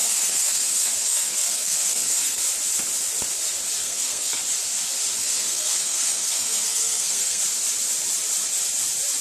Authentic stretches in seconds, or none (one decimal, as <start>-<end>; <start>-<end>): 2.4-3.8; 4.4-5.2; 7.4-9.2